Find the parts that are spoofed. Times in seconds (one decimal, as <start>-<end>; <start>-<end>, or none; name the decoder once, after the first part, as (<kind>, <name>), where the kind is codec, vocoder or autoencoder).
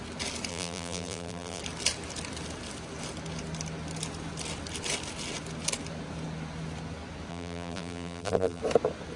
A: 0.5-1.6 (vocoder, BigVGAN v2); 7.3-8.6